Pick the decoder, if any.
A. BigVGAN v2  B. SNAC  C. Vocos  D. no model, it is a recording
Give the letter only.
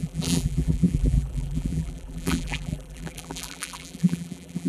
A